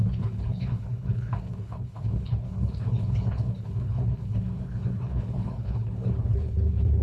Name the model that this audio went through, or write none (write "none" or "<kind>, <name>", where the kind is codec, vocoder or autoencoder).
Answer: codec, HILCodec